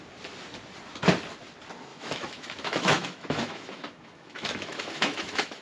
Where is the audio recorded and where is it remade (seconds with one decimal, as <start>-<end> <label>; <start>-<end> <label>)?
0.0-1.9 recorded; 1.9-5.6 remade